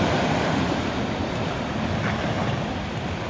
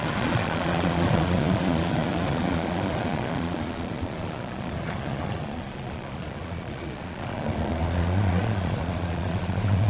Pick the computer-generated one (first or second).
second